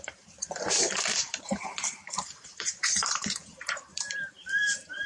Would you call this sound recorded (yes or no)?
no